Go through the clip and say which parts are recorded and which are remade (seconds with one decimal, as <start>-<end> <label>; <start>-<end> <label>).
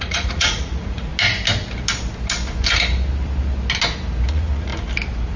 0.0-1.1 remade; 1.1-4.3 recorded; 4.3-4.7 remade; 4.7-5.4 recorded